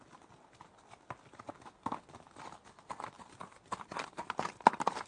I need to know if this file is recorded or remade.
recorded